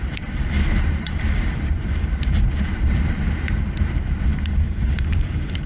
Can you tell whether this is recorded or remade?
remade